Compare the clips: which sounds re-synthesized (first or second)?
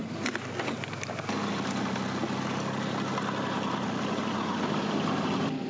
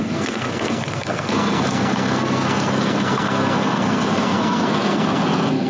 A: second